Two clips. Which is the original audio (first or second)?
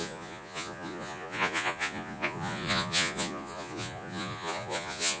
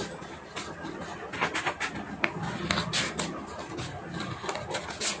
second